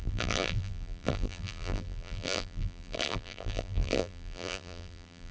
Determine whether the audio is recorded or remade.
remade